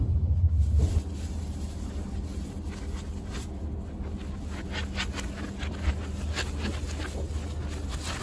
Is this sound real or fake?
real